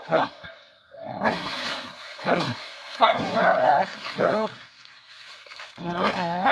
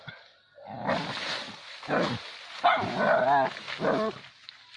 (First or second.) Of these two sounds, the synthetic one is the first